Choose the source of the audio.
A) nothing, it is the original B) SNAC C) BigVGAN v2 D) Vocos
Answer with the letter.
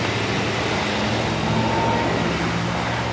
A